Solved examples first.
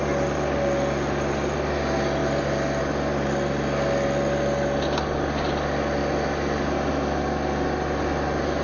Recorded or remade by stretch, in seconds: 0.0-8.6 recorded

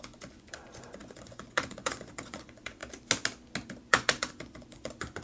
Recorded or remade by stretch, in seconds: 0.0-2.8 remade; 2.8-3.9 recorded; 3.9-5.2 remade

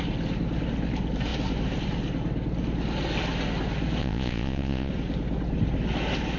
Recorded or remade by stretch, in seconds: 0.0-4.0 recorded; 4.0-4.9 remade; 4.9-6.4 recorded